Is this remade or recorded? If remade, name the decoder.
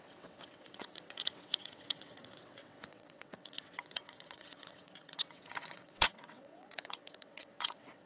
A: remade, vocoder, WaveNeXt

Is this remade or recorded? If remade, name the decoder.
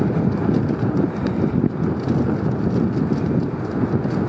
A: recorded